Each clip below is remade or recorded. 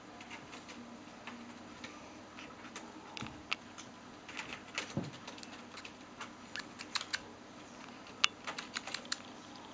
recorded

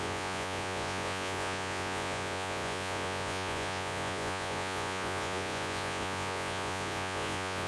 remade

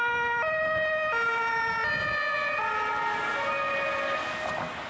recorded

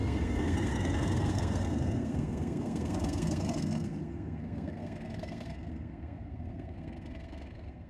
remade